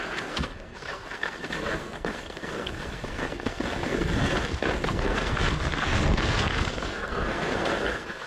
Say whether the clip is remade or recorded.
remade